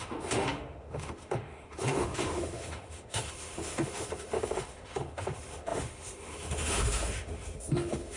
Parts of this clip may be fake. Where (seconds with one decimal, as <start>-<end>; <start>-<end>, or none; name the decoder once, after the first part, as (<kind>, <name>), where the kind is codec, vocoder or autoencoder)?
0.0-8.2 (autoencoder, DAC-VAE)